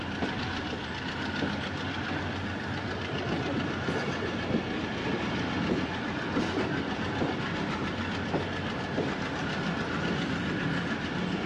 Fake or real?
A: real